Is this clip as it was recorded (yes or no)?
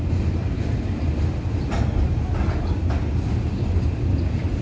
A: yes